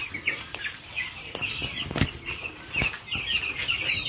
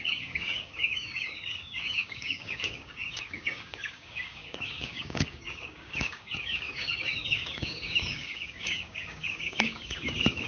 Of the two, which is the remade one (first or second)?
second